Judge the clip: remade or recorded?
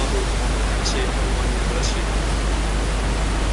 recorded